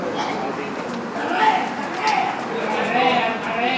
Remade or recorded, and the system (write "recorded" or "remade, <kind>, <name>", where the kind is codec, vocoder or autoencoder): recorded